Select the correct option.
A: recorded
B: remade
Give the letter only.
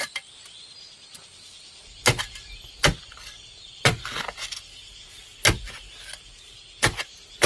A